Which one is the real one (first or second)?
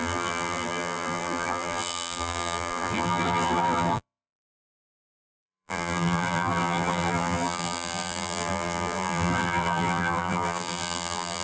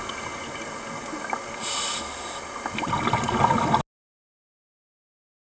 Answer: second